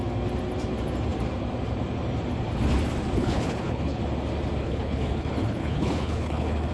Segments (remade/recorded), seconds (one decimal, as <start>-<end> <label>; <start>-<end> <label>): 0.0-3.2 recorded; 3.2-4.0 remade; 4.0-4.6 recorded; 4.6-6.7 remade